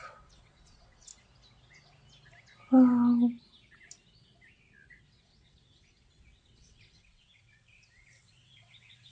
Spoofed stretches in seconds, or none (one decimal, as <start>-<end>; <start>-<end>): 0.0-1.1; 5.0-9.1